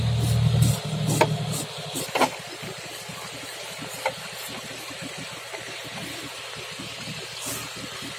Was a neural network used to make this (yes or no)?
no